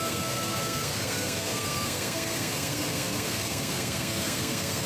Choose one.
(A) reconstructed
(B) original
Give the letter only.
A